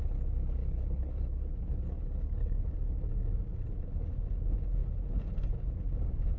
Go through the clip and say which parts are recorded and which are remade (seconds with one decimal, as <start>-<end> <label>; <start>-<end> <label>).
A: 0.0-0.6 recorded; 0.6-2.6 remade; 2.6-6.4 recorded